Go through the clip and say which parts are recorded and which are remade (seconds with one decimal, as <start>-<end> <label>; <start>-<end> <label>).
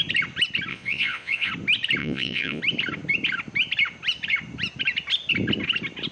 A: 0.0-0.7 recorded; 0.7-1.5 remade; 1.5-2.0 recorded; 2.0-2.6 remade; 2.6-6.1 recorded